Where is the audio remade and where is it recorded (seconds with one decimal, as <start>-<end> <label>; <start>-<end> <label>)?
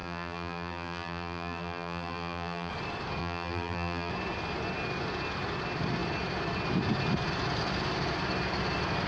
0.0-2.7 remade; 2.7-3.2 recorded; 3.2-4.1 remade; 4.1-9.1 recorded